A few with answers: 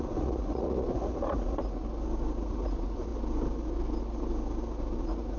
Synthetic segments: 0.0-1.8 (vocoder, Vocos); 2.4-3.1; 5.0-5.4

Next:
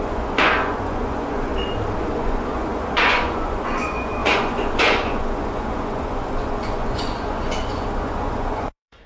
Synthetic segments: 0.0-1.5 (vocoder, Vocos); 2.0-9.1

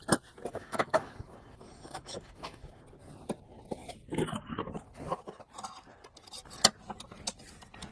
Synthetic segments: 0.5-2.8 (autoencoder, DAC-VAE)

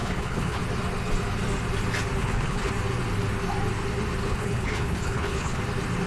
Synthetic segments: 0.0-0.6 (codec, HILCodec); 2.2-2.7; 4.2-5.6

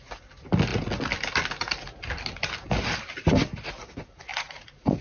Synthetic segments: 4.3-5.0 (vocoder, Vocos)

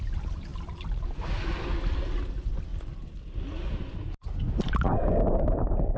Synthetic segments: none

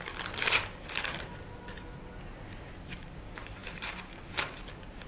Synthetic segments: 3.4-4.1 (vocoder, BigVGAN v2)